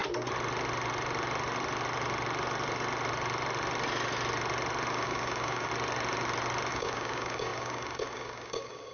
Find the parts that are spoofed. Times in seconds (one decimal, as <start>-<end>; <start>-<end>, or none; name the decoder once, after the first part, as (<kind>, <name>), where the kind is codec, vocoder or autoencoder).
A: 4.9-5.7 (codec, DAC); 6.7-8.9